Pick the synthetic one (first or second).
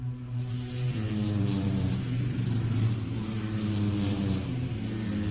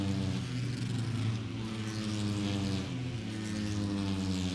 first